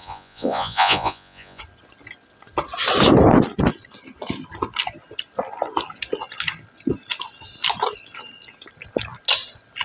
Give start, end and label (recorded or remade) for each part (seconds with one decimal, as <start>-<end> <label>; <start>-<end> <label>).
0.0-1.6 remade; 1.6-9.8 recorded